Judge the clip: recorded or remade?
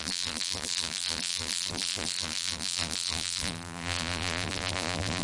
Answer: remade